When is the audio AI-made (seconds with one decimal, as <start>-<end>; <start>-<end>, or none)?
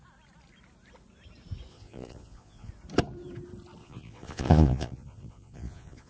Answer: 1.7-2.7; 3.8-6.1